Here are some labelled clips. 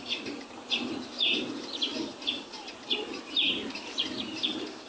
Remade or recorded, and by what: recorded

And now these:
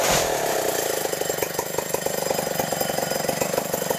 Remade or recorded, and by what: recorded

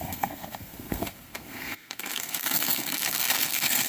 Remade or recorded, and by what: remade, codec, SNAC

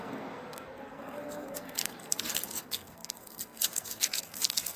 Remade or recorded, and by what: remade, codec, SNAC